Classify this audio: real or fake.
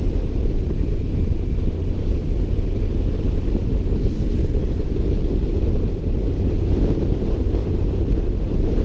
real